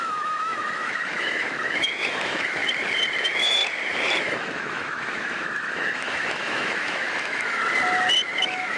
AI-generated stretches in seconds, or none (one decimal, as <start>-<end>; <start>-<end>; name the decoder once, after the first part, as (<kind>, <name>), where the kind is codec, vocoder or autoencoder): 0.0-2.6 (autoencoder, DAC-VAE); 3.2-3.6; 4.2-7.6; 8.4-8.8